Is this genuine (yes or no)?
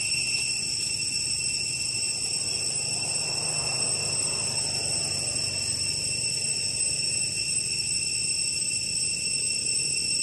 yes